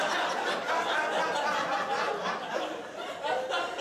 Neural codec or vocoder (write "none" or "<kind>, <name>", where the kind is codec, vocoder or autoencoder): none